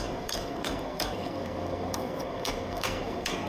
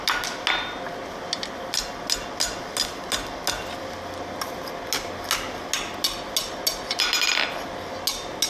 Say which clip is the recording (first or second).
second